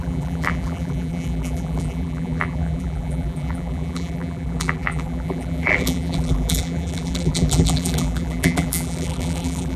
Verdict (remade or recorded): remade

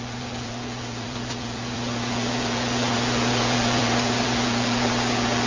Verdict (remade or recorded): remade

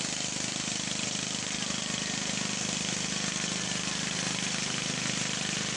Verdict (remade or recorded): recorded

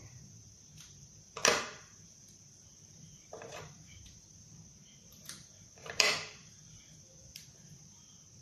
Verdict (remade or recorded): remade